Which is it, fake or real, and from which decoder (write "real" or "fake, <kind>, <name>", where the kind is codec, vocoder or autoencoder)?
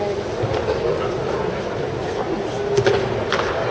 real